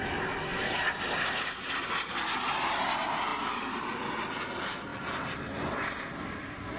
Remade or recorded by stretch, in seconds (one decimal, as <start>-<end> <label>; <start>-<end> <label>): 0.0-6.8 recorded